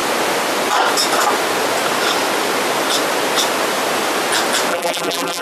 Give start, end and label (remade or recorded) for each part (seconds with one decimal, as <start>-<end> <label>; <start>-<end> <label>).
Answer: 0.0-4.7 recorded; 4.7-5.4 remade